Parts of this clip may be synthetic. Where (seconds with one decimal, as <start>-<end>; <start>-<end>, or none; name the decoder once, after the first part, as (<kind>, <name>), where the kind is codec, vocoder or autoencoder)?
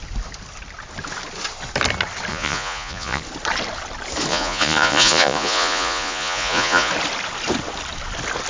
2.3-3.2 (vocoder, Vocos); 4.3-6.9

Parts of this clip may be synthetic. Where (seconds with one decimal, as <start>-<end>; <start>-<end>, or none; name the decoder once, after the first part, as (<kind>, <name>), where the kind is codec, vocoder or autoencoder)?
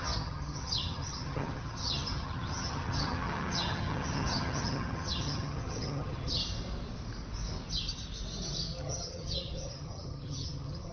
0.0-6.4 (vocoder, HiFi-GAN); 8.8-10.9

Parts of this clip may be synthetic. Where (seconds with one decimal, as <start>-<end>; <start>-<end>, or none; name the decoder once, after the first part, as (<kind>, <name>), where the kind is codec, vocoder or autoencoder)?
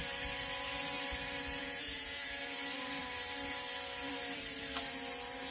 1.6-2.4 (vocoder, Vocos)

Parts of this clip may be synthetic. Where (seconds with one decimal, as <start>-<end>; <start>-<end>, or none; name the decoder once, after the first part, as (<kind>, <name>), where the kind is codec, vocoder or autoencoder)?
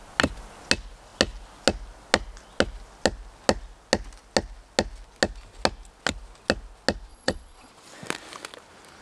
7.1-7.7 (vocoder, Vocos)